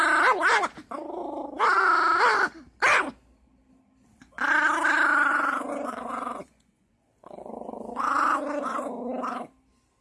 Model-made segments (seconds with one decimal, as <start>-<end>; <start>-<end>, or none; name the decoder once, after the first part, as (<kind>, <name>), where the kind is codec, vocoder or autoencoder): 5.3-9.0 (vocoder, Vocos)